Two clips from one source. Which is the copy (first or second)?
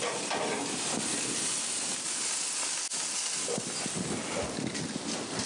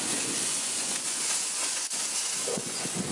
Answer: second